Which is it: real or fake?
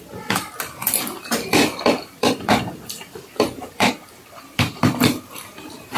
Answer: fake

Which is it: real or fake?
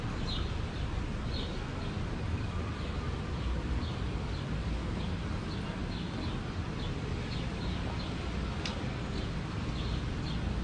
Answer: real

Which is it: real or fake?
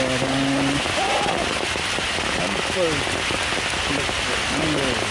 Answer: real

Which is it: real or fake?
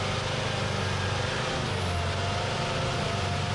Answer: real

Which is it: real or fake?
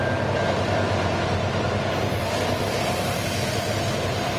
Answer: real